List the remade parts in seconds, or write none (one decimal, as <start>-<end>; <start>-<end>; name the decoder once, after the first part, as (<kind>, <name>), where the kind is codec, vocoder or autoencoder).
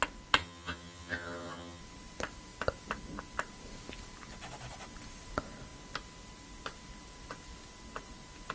0.4-1.8 (vocoder, HiFi-GAN)